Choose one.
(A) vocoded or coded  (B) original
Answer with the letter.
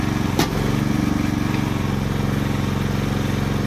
B